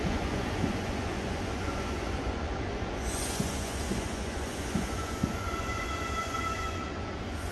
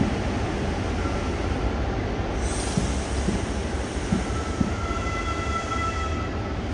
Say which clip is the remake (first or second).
first